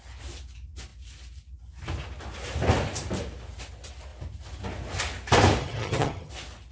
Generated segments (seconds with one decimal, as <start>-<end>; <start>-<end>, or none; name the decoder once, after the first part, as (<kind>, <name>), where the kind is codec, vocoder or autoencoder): 5.6-6.3 (vocoder, HiFi-GAN)